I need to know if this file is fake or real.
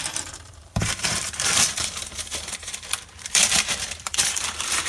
fake